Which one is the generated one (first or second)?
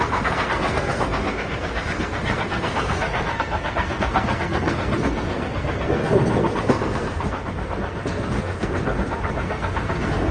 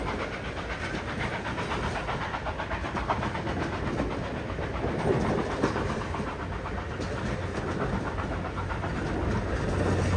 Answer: first